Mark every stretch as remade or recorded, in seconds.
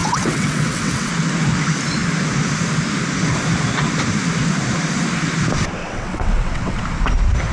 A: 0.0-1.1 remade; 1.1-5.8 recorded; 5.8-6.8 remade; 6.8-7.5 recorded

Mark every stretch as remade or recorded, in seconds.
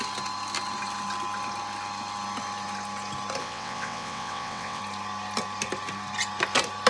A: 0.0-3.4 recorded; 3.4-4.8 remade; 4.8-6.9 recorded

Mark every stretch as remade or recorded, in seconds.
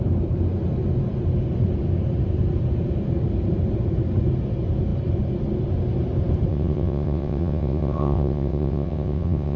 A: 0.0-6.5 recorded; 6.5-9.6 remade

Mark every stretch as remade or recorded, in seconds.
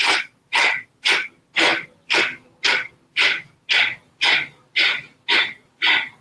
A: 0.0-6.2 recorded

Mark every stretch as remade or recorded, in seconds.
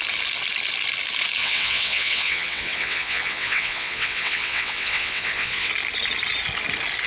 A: 0.0-1.4 recorded; 1.4-5.7 remade; 5.7-7.1 recorded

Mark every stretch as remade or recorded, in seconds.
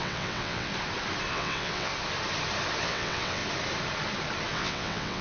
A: 0.0-0.7 remade; 0.7-1.3 recorded; 1.3-1.9 remade; 1.9-2.8 recorded; 2.8-3.4 remade; 3.4-4.5 recorded; 4.5-5.2 remade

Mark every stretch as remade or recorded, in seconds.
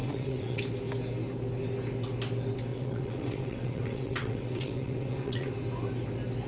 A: 0.0-0.6 remade; 0.6-2.7 recorded; 2.7-5.5 remade; 5.5-6.5 recorded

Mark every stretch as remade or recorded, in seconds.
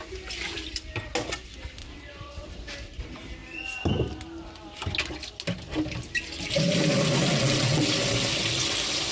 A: 0.0-1.8 recorded; 1.8-2.5 remade; 2.5-7.3 recorded; 7.3-7.8 remade; 7.8-9.1 recorded